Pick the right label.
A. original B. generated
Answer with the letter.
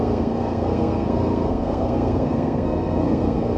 B